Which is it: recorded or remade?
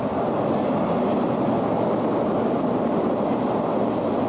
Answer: recorded